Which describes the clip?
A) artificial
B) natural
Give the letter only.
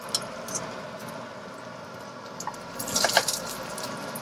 B